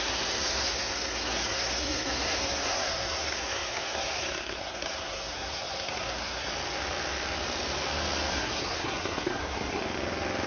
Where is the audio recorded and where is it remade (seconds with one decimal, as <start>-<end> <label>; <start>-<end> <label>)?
0.0-6.5 remade; 6.5-8.3 recorded; 8.3-9.8 remade; 9.8-10.5 recorded

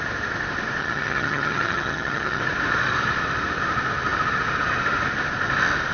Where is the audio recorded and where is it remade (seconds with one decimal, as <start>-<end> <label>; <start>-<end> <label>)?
0.0-0.8 recorded; 0.8-2.4 remade; 2.4-5.9 recorded